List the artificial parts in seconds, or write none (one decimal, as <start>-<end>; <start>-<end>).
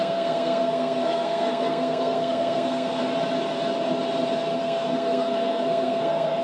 0.0-3.0; 4.6-6.4